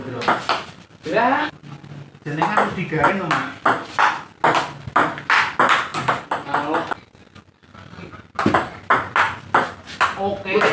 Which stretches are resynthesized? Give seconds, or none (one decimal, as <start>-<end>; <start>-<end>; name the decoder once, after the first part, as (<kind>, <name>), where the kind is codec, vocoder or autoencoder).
none